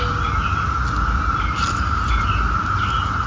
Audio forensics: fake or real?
real